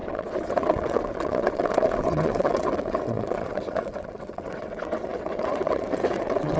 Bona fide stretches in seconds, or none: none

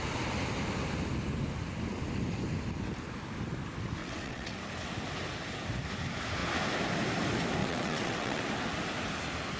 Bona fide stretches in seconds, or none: 0.0-4.0; 4.6-7.6; 8.4-9.6

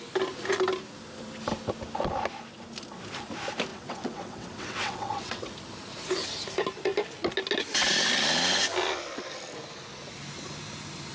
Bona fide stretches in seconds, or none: 0.0-3.7; 5.5-11.1

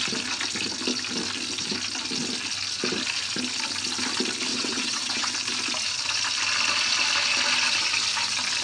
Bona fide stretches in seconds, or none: 0.0-4.5; 5.3-8.6